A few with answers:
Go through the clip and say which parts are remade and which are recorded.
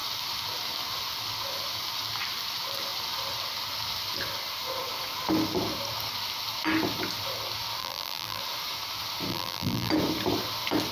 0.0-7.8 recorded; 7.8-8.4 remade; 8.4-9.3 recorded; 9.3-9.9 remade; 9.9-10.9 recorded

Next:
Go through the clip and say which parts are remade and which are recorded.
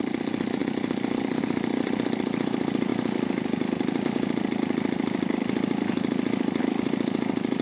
0.0-7.6 remade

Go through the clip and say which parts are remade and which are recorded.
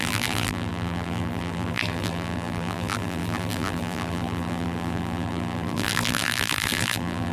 0.0-7.3 remade